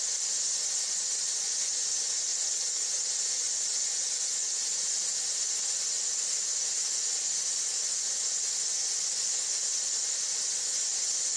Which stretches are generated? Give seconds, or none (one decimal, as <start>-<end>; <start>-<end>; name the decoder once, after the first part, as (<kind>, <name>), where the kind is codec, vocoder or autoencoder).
none